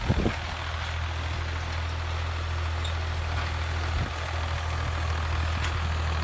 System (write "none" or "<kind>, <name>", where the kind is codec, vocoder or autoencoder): none